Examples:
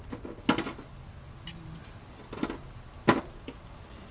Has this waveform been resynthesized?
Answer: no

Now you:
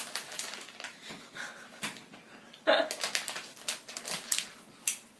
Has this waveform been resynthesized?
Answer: no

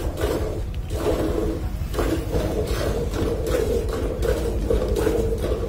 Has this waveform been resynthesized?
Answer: no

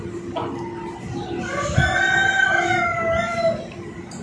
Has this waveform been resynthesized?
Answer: no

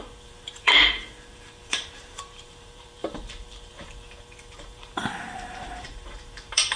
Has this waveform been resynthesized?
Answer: yes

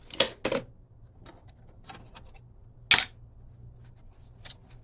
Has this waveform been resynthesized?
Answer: no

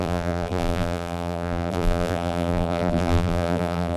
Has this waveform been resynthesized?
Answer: yes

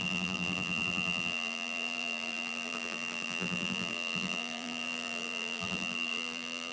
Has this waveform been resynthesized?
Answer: yes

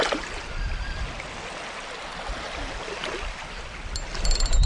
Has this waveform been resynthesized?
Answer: no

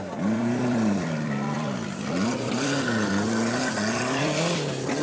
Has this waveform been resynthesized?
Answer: yes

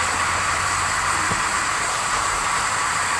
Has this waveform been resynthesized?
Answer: yes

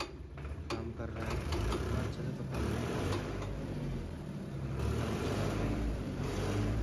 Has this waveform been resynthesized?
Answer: yes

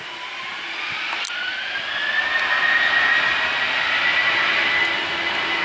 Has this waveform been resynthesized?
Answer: no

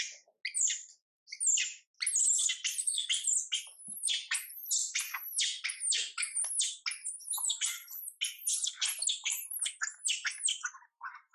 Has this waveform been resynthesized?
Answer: no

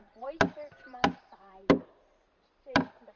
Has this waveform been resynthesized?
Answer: yes